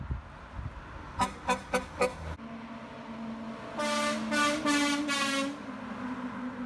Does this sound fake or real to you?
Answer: real